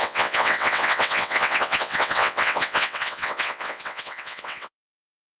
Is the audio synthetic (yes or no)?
yes